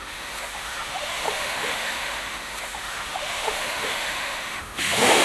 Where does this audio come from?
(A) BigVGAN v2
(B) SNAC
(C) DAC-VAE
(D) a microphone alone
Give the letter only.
C